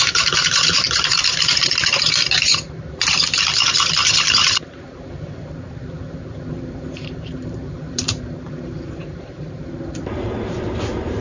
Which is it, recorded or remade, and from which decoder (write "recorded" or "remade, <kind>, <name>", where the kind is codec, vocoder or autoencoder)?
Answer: remade, vocoder, BigVGAN v2